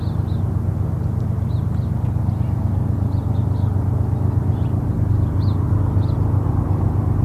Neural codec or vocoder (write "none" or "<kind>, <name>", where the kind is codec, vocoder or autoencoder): none